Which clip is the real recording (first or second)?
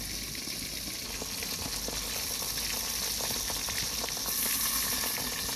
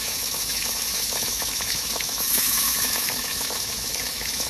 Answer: first